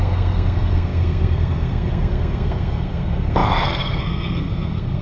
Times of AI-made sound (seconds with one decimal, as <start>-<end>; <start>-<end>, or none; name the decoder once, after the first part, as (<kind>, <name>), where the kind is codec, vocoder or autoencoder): 0.0-5.0 (codec, SNAC)